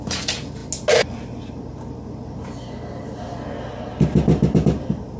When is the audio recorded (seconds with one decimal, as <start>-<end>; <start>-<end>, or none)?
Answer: 0.0-5.2